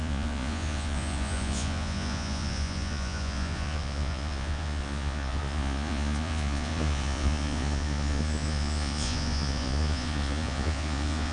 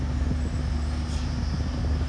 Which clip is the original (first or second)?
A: second